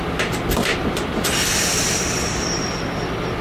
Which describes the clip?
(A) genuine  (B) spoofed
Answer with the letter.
B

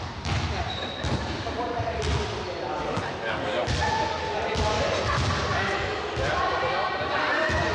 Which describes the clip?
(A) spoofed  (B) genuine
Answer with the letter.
B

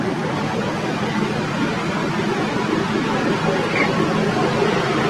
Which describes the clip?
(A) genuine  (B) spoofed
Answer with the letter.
A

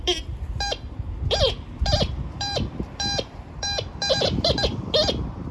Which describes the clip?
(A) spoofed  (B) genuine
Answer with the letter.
A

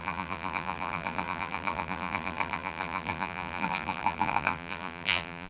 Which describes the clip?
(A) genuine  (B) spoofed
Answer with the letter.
B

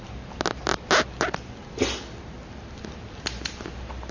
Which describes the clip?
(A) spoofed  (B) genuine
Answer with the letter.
B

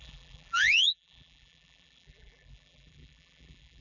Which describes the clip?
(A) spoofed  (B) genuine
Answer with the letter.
A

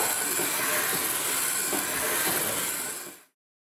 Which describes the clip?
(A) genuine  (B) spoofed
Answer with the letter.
A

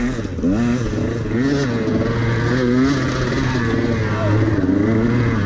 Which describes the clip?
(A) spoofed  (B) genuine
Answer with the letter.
B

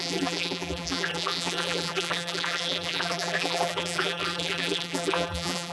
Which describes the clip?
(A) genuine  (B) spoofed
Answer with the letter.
B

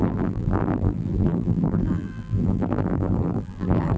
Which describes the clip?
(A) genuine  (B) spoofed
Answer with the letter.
B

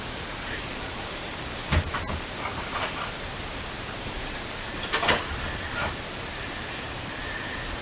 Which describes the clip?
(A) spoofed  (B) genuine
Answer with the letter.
A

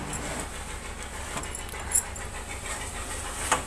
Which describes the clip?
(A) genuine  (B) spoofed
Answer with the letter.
A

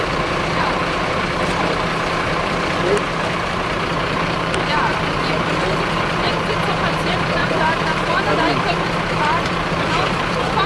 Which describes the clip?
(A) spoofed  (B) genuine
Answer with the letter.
A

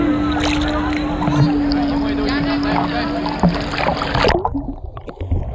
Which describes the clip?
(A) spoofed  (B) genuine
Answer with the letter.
B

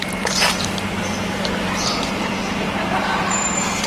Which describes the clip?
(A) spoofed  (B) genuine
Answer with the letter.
A